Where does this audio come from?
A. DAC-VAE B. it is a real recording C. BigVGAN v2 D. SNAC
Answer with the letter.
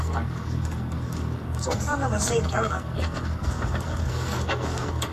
D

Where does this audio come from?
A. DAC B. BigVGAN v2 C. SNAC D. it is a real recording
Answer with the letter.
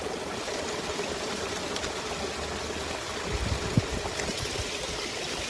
D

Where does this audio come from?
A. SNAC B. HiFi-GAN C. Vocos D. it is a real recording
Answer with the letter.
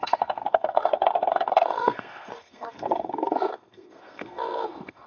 A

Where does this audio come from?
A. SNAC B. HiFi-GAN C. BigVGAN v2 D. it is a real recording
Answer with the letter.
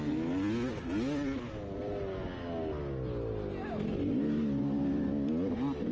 D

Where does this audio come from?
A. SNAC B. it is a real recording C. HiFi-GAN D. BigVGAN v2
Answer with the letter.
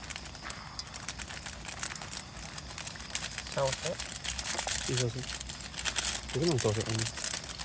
B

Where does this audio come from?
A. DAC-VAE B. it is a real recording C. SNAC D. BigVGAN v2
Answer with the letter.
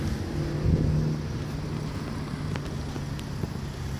B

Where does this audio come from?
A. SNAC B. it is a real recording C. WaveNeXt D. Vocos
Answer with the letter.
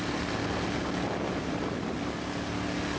B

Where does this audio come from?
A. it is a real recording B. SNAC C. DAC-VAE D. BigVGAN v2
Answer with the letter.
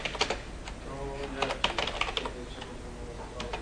A